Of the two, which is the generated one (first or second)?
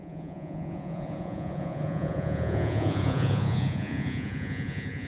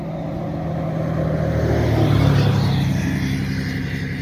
first